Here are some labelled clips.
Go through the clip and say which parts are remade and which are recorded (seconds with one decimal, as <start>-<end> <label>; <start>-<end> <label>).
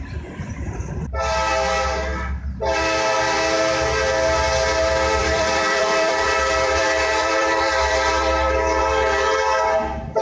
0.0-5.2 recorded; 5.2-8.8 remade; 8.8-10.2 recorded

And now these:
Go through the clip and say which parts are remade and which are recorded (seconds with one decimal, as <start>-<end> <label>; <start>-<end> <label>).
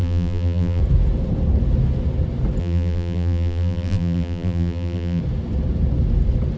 0.0-0.8 remade; 0.8-2.6 recorded; 2.6-5.2 remade; 5.2-6.6 recorded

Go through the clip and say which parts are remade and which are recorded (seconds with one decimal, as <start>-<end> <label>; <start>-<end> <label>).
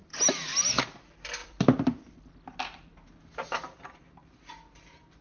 0.0-1.4 recorded; 1.4-2.2 remade; 2.2-5.2 recorded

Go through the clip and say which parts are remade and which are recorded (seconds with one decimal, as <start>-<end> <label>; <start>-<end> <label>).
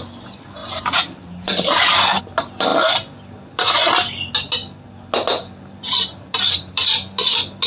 0.0-0.6 recorded; 0.6-2.2 remade; 2.2-5.3 recorded; 5.3-6.8 remade; 6.8-7.7 recorded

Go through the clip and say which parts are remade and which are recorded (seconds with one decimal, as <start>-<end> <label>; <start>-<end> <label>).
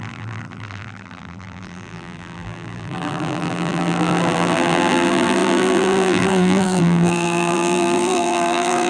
0.0-8.9 remade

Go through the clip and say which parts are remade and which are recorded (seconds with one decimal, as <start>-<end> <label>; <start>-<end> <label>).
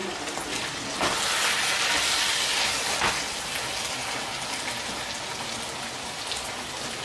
0.0-7.0 recorded